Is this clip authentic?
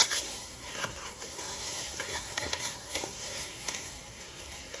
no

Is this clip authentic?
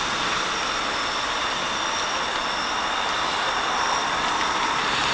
yes